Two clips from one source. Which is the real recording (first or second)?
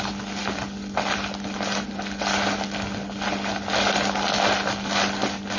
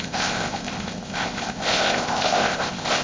first